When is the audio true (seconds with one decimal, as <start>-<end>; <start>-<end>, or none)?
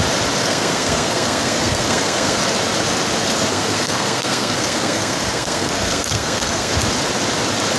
0.0-0.4; 2.4-3.5; 6.7-7.8